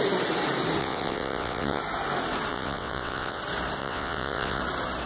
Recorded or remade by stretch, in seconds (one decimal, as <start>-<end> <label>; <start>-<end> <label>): 0.0-0.8 recorded; 0.8-1.8 remade; 1.8-2.5 recorded; 2.5-3.4 remade; 3.4-3.8 recorded; 3.8-4.6 remade; 4.6-5.1 recorded